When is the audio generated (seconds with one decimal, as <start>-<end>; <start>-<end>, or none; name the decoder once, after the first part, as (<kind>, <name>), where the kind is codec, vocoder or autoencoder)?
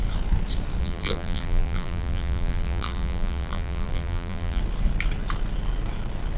0.8-4.6 (vocoder, BigVGAN v2)